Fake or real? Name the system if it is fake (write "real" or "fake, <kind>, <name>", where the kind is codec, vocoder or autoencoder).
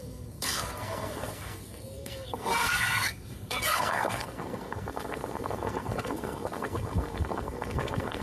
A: fake, codec, SNAC